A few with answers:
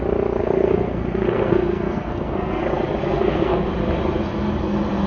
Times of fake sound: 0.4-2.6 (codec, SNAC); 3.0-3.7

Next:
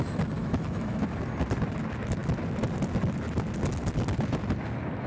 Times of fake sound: 0.4-1.0 (autoencoder, DAC-VAE)

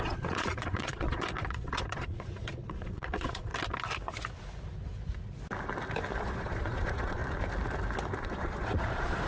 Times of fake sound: 0.0-3.5 (vocoder, Vocos); 6.2-7.2; 8.2-9.3

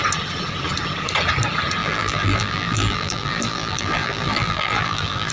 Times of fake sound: 1.8-5.3 (vocoder, BigVGAN v2)

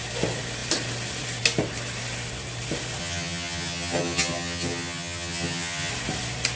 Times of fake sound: 3.0-5.9 (vocoder, HiFi-GAN)

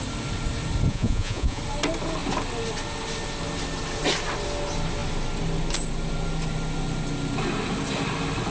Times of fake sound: 0.9-1.6 (vocoder, Vocos)

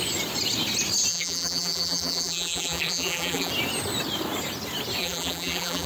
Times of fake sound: 1.1-3.5 (vocoder, BigVGAN v2); 5.0-5.9